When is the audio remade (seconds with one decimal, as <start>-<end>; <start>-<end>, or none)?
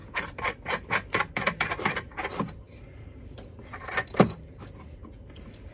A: 0.0-2.1; 2.8-5.0